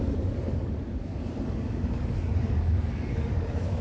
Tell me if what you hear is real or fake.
fake